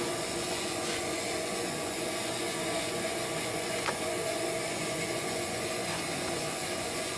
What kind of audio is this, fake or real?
fake